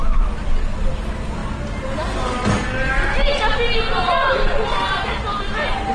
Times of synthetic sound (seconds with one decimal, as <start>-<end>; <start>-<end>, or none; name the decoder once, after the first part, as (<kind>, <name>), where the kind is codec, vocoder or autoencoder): none